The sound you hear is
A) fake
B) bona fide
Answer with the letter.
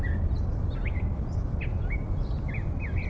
B